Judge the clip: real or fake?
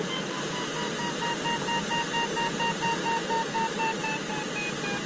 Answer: real